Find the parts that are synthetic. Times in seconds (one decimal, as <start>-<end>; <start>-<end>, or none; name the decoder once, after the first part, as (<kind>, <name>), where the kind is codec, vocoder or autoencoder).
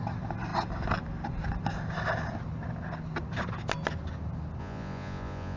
4.6-5.6 (vocoder, Vocos)